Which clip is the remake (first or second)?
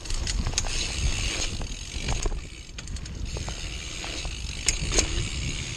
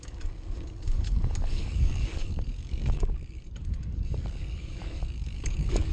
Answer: second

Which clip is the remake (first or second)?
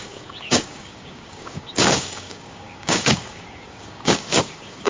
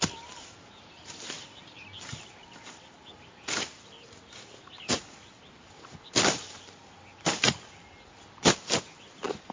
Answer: first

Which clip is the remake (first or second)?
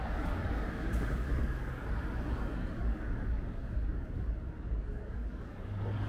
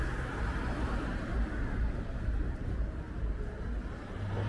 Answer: first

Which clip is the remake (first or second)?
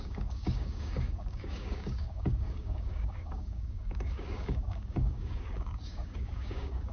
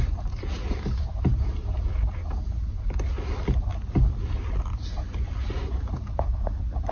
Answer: first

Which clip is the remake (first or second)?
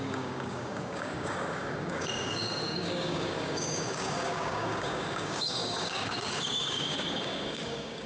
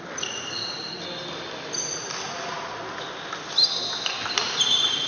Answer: first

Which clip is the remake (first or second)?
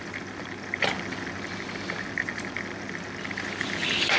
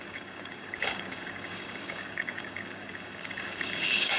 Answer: second